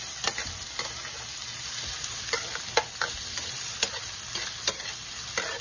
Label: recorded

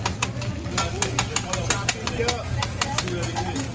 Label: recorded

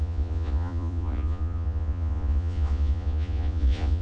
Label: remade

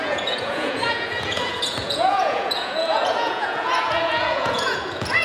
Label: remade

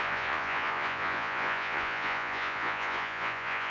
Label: remade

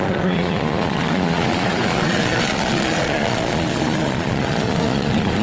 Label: remade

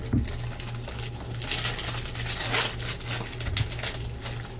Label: recorded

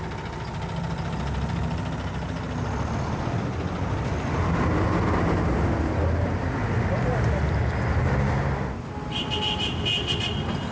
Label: recorded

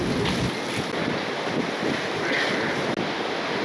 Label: recorded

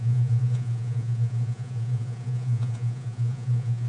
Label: remade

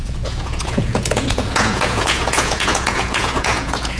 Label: remade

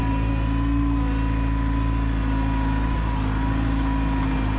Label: recorded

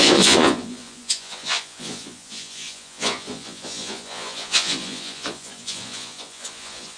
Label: remade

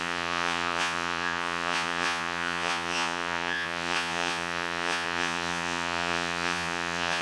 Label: remade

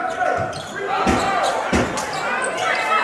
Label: recorded